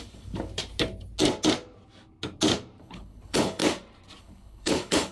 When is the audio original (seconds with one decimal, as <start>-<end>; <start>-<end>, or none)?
0.5-2.8; 3.6-4.2